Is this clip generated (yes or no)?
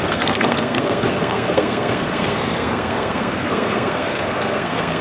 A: yes